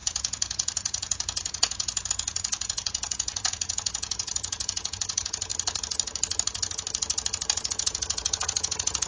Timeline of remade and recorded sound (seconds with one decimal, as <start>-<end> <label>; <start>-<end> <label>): 0.0-5.5 remade; 5.5-7.7 recorded; 7.7-9.1 remade